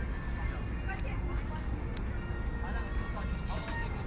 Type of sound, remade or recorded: recorded